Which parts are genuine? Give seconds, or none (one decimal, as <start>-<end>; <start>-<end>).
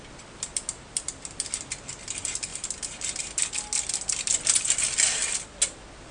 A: 0.0-6.1